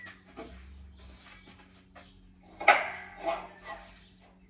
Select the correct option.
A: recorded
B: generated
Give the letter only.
A